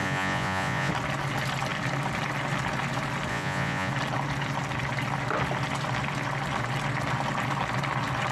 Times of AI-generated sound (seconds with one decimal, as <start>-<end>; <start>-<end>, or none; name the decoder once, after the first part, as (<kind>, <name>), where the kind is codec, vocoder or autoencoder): 0.0-0.9 (vocoder, Vocos); 3.3-3.9